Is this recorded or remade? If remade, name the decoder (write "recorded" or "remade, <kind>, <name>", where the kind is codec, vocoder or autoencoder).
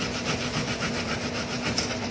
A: recorded